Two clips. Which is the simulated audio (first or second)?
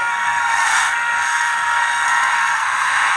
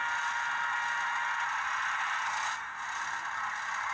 first